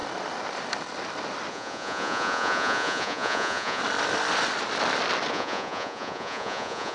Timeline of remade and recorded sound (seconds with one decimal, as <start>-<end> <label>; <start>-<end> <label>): 0.0-1.5 recorded; 1.5-3.8 remade; 3.8-5.3 recorded; 5.3-6.9 remade